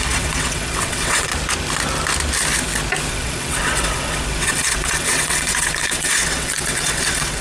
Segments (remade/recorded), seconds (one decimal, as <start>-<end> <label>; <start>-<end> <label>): 0.0-1.3 remade; 1.3-3.1 recorded; 3.1-7.4 remade